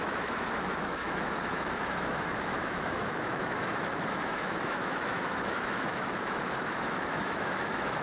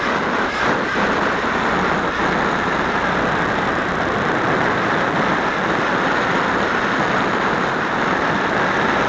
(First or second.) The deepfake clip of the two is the first